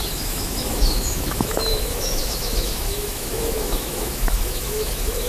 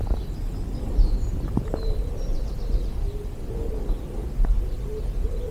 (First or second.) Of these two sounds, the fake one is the first